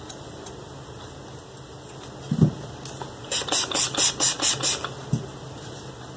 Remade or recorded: recorded